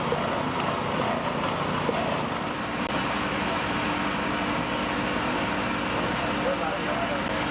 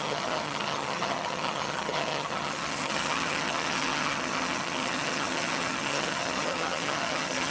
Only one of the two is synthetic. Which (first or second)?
second